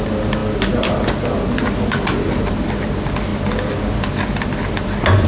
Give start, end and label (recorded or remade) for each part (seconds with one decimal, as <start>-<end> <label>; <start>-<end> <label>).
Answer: 0.0-5.3 recorded